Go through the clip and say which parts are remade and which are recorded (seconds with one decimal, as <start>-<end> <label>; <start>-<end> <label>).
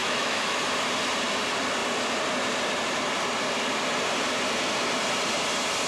0.0-0.6 remade; 0.6-5.9 recorded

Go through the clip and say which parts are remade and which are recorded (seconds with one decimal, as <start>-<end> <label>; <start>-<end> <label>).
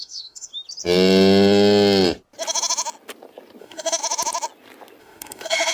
0.0-0.5 remade; 0.5-3.6 recorded; 3.6-4.0 remade; 4.0-5.0 recorded; 5.0-5.7 remade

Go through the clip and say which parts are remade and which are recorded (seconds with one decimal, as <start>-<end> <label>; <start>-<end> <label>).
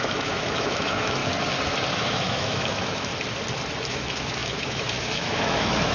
0.0-1.2 remade; 1.2-1.9 recorded; 1.9-3.1 remade; 3.1-3.9 recorded; 3.9-5.9 remade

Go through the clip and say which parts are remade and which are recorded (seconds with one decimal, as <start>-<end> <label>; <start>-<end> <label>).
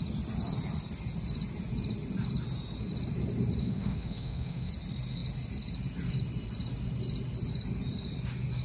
0.0-3.6 recorded; 3.6-4.7 remade; 4.7-8.6 recorded